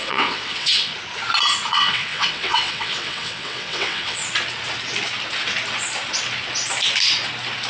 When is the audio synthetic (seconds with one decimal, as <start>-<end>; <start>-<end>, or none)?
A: 0.0-0.9; 1.7-4.2